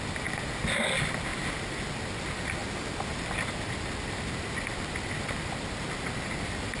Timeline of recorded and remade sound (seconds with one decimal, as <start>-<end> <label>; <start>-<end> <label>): 0.0-6.8 recorded